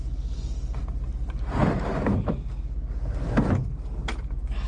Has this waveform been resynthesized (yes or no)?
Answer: no